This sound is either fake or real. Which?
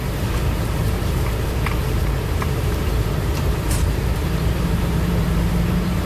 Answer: fake